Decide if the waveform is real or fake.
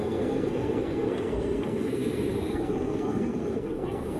fake